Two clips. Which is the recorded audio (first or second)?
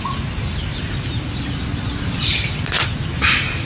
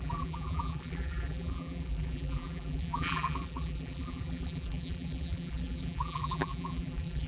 first